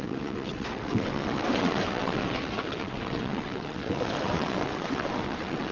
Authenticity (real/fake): fake